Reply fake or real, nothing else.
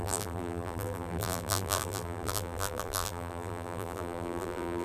fake